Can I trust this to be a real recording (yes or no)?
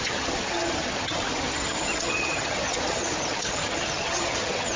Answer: no